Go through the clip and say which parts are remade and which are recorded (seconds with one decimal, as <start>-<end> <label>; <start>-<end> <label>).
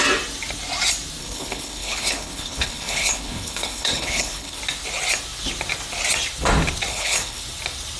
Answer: 0.0-1.2 recorded; 1.2-4.6 remade; 4.6-6.9 recorded; 6.9-7.4 remade; 7.4-8.0 recorded